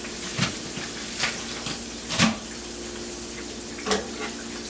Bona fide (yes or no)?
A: yes